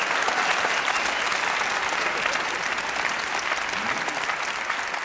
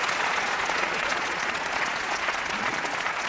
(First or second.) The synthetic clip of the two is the second